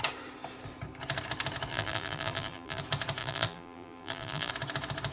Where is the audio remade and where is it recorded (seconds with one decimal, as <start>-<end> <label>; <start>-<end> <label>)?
0.0-1.7 recorded; 1.7-2.8 remade; 2.8-3.2 recorded; 3.2-4.5 remade; 4.5-5.1 recorded